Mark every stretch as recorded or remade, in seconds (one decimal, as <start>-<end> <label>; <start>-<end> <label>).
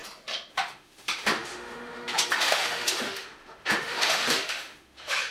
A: 0.0-0.5 recorded; 0.5-5.3 remade